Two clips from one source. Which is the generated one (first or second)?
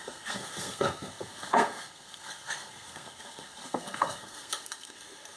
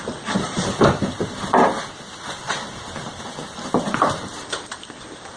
first